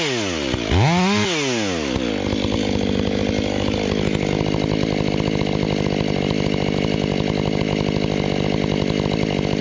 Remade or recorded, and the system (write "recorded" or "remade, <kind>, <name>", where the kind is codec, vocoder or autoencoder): recorded